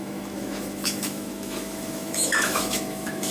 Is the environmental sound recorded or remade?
remade